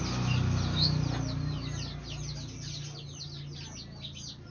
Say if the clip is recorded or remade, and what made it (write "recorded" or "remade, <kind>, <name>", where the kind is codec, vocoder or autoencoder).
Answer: recorded